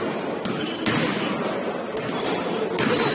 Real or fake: real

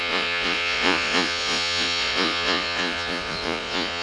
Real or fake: fake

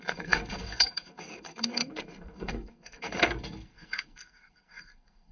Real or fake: fake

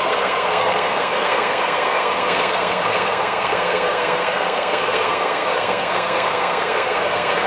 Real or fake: fake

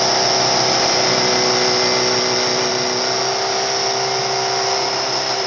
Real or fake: real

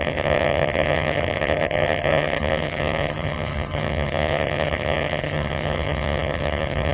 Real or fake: fake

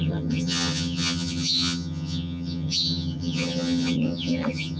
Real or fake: fake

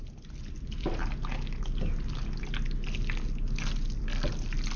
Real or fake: real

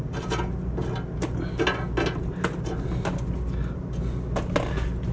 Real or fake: real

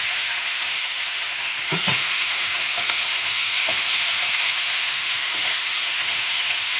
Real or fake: fake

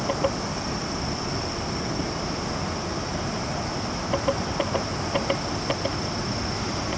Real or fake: real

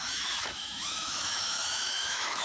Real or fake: fake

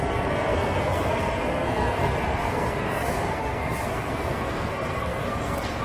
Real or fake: fake